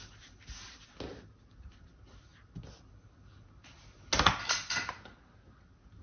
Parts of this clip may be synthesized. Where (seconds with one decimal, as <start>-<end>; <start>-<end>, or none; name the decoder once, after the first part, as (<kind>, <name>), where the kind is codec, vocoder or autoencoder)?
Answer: none